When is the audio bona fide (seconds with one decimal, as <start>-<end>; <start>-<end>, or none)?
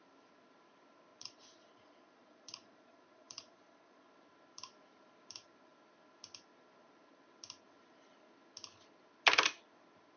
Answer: 0.0-1.1; 4.1-10.2